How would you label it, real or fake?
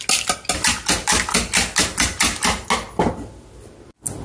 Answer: real